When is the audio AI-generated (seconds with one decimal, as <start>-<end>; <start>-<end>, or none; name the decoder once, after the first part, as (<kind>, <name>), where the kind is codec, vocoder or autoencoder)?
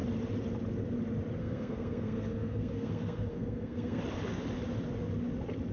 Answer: 1.4-4.0 (codec, SNAC)